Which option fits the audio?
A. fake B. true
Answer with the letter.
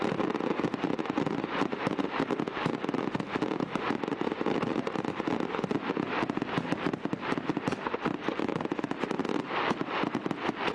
B